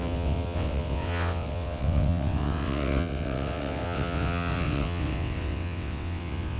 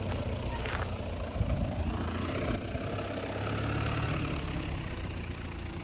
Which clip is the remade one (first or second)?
first